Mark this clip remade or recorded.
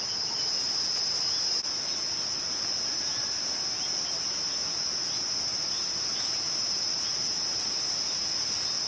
recorded